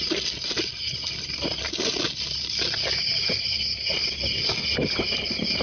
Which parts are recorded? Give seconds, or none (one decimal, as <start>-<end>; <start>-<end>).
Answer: 0.0-5.6